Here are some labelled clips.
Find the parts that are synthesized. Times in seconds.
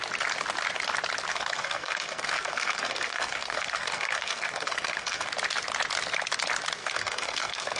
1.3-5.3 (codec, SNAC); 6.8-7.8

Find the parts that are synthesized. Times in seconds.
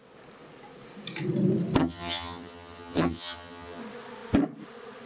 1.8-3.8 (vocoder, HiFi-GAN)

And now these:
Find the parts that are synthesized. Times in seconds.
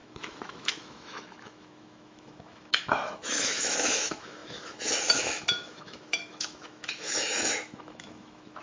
0.0-8.6 (autoencoder, DAC-VAE)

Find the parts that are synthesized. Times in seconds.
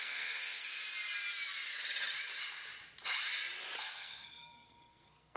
0.0-0.8 (codec, SNAC); 3.8-5.4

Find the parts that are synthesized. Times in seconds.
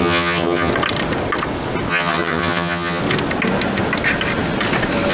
0.0-0.7 (vocoder, HiFi-GAN); 1.9-3.0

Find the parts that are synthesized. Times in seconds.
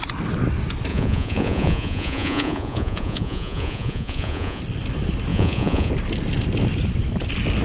0.9-4.6 (vocoder, Vocos); 5.3-5.9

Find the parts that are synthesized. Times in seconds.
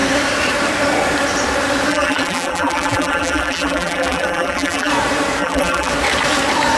1.9-4.9 (vocoder, BigVGAN v2); 5.4-5.9